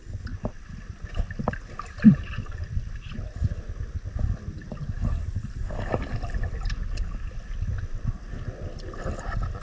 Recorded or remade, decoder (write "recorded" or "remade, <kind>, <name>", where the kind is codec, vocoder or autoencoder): recorded